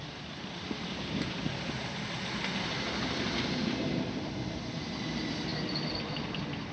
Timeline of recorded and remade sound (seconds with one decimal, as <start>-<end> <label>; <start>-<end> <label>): 0.0-6.7 recorded